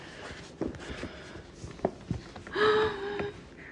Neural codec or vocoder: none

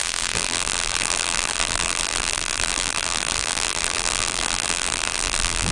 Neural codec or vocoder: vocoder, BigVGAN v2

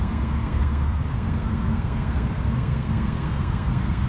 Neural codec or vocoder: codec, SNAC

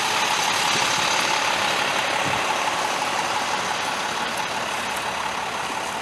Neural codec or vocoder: none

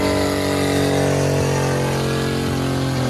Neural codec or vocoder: none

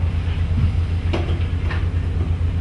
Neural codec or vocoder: none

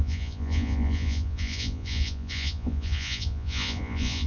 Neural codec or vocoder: vocoder, Vocos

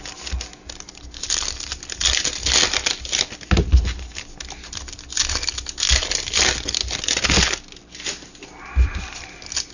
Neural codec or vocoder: none